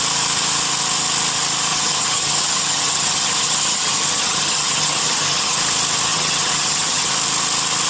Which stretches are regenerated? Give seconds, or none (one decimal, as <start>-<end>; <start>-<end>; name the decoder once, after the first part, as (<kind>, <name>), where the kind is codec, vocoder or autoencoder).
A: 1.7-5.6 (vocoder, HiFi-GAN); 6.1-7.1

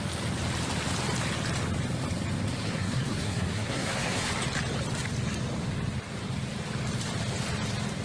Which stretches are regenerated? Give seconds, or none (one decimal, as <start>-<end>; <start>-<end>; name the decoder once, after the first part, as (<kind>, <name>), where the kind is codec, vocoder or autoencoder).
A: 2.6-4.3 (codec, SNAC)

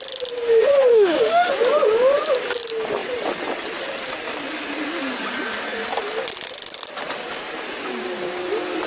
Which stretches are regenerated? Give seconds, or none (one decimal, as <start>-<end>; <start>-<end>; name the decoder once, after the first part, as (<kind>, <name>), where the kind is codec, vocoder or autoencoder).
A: 0.9-1.5 (autoencoder, DAC-VAE)